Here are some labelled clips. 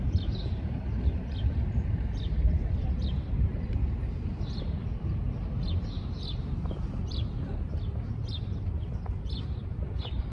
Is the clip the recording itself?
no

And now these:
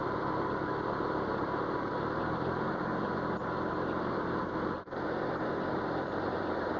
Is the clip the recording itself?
no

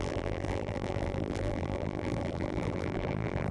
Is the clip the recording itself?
no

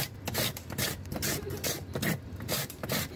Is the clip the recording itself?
no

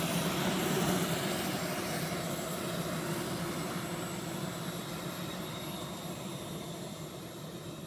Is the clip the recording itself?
yes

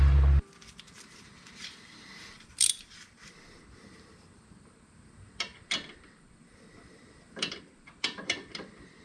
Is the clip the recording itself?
no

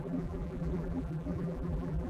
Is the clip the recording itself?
no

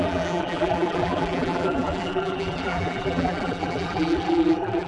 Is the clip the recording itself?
no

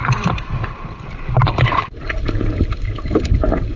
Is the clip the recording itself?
no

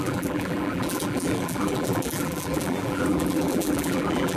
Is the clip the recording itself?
no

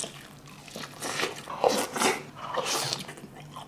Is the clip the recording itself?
yes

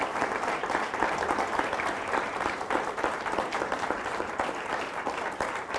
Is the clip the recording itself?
no